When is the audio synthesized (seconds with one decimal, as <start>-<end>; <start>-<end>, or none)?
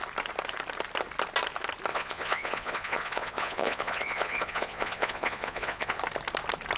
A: 1.9-6.0